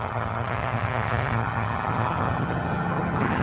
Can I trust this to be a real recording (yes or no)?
no